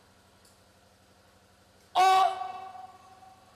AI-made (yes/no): no